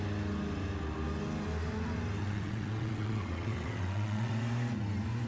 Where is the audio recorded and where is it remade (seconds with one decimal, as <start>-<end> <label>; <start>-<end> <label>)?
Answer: 0.0-2.2 recorded; 2.2-4.3 remade; 4.3-5.3 recorded